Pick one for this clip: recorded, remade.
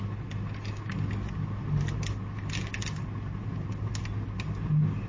recorded